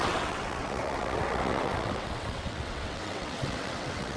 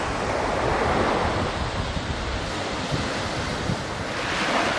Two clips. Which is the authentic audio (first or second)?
second